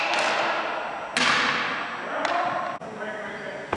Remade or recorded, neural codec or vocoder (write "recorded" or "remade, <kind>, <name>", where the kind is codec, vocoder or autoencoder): recorded